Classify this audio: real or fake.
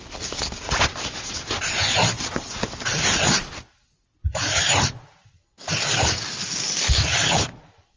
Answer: real